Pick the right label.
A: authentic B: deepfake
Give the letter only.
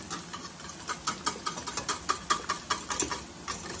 A